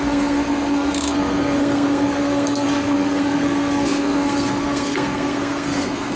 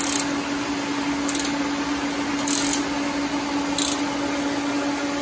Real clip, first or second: second